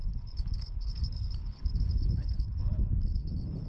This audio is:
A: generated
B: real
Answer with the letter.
A